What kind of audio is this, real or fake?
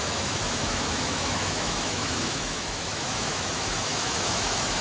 fake